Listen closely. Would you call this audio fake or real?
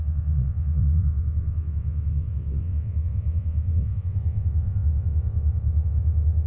fake